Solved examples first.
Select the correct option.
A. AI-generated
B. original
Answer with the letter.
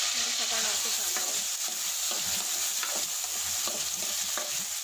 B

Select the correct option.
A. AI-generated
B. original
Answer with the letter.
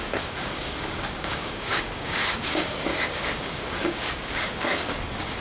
A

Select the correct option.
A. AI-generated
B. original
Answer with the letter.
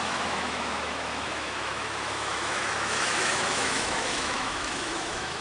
A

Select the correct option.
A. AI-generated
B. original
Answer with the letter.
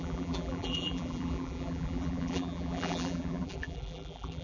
A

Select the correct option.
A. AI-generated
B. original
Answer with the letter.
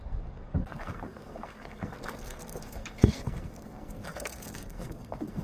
A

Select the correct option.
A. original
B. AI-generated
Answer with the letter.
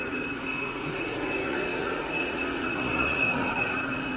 B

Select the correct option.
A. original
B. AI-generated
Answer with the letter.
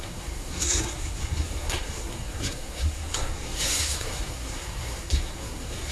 B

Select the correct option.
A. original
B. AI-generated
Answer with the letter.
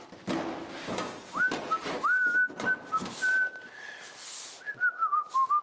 A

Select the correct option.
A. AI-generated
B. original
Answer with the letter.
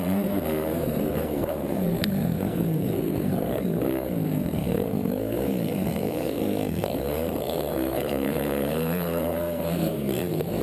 A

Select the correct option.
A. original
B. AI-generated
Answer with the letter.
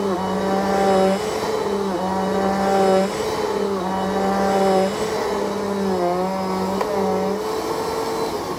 A